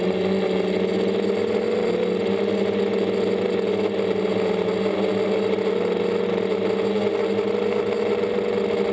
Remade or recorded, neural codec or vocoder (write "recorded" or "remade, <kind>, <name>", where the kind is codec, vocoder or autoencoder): recorded